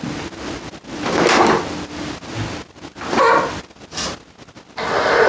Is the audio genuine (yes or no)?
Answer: yes